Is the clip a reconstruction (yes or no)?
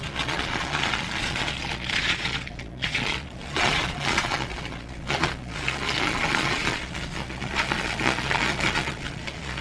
yes